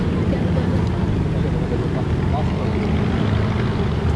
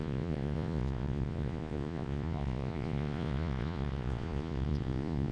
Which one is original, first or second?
first